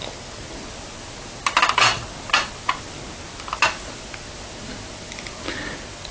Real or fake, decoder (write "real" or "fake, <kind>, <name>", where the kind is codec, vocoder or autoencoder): real